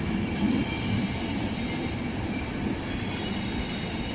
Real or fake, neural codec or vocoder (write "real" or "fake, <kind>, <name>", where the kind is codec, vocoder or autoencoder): real